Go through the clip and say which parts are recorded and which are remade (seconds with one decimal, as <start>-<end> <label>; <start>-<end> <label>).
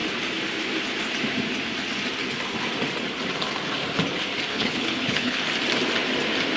0.0-4.5 recorded; 4.5-5.4 remade; 5.4-6.6 recorded